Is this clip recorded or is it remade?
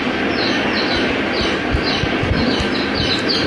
recorded